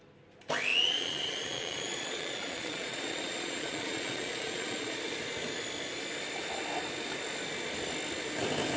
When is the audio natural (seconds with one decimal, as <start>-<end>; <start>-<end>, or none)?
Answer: 0.0-0.7; 5.0-8.8